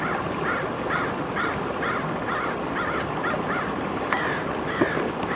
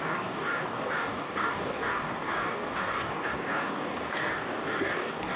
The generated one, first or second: second